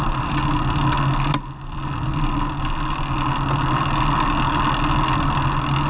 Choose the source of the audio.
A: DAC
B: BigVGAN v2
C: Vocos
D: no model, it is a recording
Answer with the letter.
D